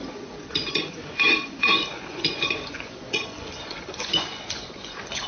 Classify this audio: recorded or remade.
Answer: remade